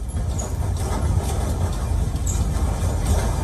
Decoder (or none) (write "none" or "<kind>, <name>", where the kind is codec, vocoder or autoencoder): none